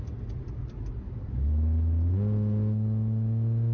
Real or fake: real